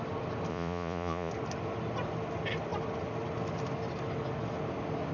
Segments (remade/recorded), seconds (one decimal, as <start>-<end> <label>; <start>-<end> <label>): 0.0-0.5 recorded; 0.5-1.3 remade; 1.3-5.1 recorded